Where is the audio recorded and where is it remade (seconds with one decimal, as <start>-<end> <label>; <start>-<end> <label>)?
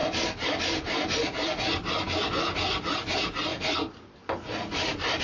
0.0-5.2 recorded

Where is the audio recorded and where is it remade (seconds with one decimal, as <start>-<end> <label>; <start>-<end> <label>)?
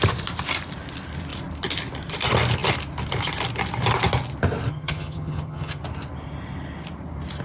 0.0-4.7 recorded; 4.7-5.8 remade; 5.8-7.4 recorded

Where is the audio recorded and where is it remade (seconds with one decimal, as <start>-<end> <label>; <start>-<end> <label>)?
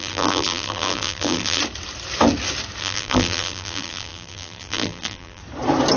0.0-1.6 remade; 1.6-2.8 recorded; 2.8-5.4 remade; 5.4-6.0 recorded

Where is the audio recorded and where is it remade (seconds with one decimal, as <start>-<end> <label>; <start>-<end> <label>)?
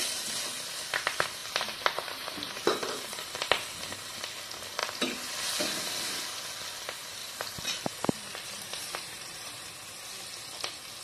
0.0-1.4 recorded; 1.4-3.5 remade; 3.5-7.2 recorded; 7.2-9.5 remade; 9.5-11.0 recorded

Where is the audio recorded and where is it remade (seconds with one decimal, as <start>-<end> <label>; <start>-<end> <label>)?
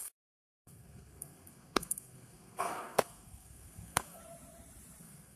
0.0-4.2 remade; 4.2-5.0 recorded; 5.0-5.4 remade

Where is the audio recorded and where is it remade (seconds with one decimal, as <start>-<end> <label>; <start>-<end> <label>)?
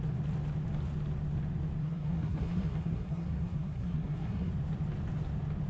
0.0-1.8 recorded; 1.8-4.5 remade; 4.5-5.7 recorded